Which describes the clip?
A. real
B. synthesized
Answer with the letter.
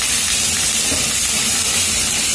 A